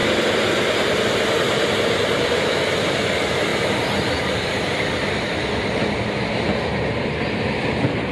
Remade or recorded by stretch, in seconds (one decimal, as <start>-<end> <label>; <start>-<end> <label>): 0.0-3.5 recorded; 3.5-7.4 remade; 7.4-8.1 recorded